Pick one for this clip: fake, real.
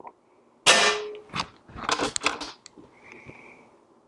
real